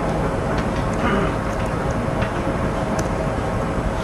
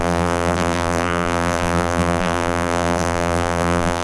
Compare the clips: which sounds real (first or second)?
first